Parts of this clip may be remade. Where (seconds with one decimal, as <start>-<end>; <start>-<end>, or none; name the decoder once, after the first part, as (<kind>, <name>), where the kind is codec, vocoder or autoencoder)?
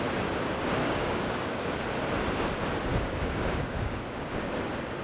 0.8-1.7 (codec, DAC); 2.9-4.5